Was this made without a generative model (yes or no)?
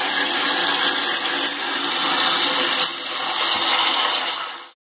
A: yes